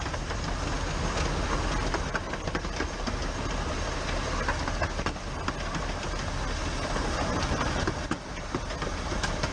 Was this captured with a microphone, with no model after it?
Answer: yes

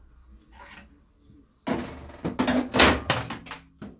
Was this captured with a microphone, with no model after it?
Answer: yes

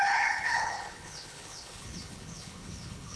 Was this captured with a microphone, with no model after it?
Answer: no